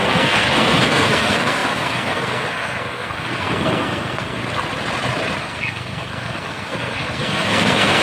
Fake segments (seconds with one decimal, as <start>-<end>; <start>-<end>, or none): 0.0-4.4; 5.4-8.0